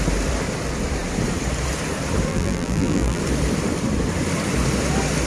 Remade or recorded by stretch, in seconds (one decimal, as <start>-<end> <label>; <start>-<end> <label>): 0.0-2.3 recorded; 2.3-3.2 remade; 3.2-5.3 recorded